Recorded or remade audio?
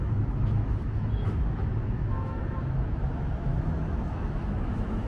remade